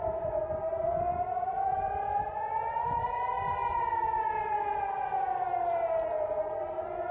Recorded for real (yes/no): yes